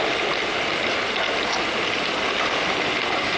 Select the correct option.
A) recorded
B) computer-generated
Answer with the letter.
A